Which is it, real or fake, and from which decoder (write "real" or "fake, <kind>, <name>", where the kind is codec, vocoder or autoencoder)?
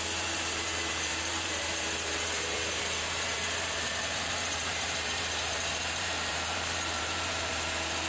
fake, vocoder, BigVGAN v2